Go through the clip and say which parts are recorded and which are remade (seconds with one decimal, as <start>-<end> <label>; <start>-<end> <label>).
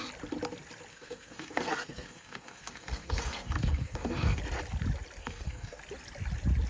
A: 0.0-0.9 recorded; 0.9-4.4 remade; 4.4-5.2 recorded; 5.2-5.8 remade; 5.8-6.7 recorded